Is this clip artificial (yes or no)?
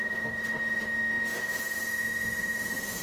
yes